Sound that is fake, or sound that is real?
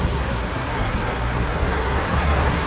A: fake